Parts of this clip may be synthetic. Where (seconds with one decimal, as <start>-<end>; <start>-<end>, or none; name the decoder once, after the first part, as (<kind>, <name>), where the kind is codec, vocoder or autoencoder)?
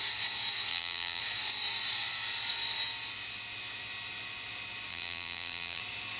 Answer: 0.7-1.2 (vocoder, BigVGAN v2); 4.9-5.8